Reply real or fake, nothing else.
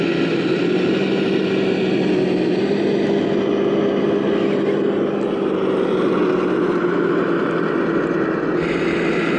real